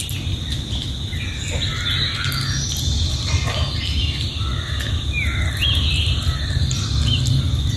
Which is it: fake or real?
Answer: real